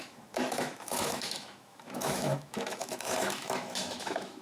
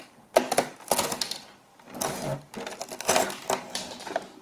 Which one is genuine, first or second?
second